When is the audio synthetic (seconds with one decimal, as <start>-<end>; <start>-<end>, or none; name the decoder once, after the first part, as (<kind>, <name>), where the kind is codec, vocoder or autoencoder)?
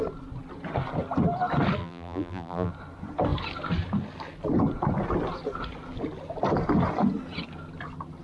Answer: 1.8-2.7 (vocoder, BigVGAN v2)